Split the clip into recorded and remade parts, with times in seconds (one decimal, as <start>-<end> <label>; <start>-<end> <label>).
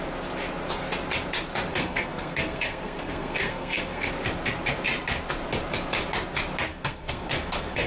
0.0-1.7 recorded; 1.7-4.1 remade; 4.1-6.7 recorded; 6.7-7.9 remade